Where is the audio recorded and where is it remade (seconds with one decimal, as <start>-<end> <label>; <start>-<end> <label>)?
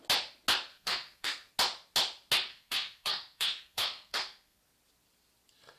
0.0-0.7 recorded; 0.7-1.5 remade; 1.5-2.5 recorded; 2.5-4.6 remade; 4.6-5.8 recorded